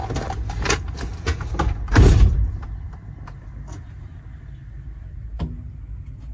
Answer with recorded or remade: recorded